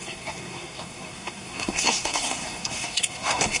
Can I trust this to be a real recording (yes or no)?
no